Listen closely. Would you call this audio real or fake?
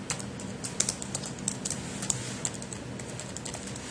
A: real